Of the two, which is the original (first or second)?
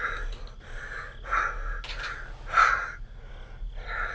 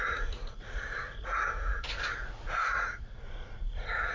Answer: first